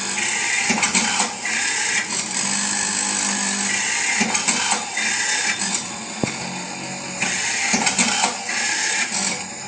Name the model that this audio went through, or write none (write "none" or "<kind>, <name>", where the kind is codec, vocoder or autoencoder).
none